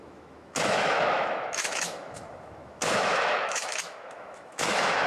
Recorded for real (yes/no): no